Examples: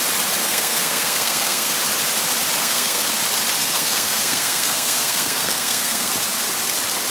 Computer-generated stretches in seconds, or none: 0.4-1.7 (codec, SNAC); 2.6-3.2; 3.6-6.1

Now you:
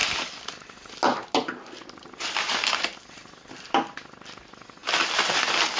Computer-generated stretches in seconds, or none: none

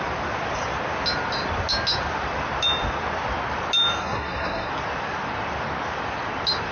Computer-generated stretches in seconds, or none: 4.0-4.7 (codec, SNAC)

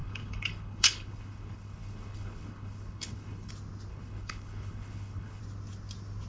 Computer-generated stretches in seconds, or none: 0.0-3.5 (codec, HILCodec); 3.9-5.4